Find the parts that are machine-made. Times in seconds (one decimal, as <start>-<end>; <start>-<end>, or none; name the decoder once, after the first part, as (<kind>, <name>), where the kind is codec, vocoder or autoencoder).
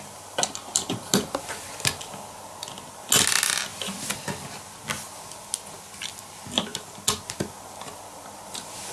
none